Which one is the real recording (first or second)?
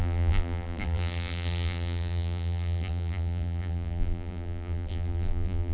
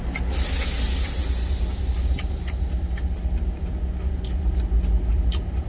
second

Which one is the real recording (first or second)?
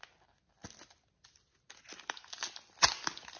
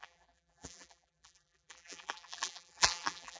first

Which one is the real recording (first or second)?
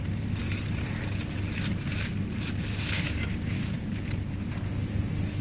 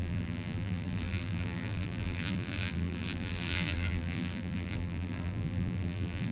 first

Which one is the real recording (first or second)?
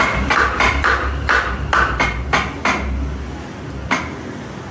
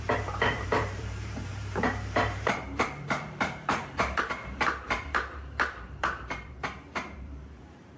first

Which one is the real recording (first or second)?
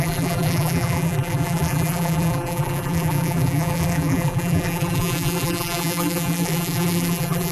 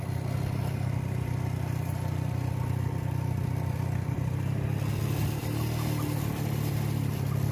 second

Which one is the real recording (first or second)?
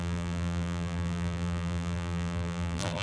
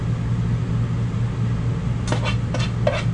second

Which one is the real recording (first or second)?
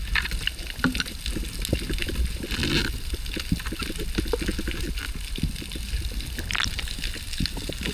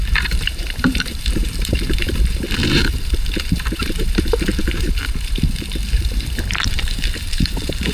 first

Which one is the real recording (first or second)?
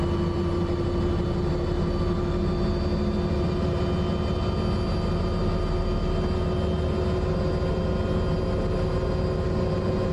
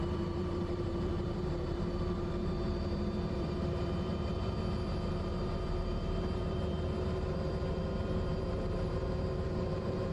first